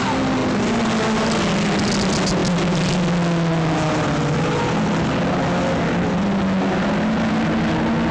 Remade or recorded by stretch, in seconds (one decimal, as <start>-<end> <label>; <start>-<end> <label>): 0.0-8.1 recorded